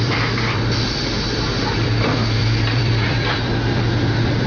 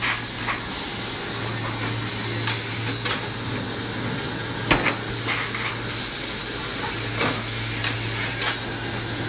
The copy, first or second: first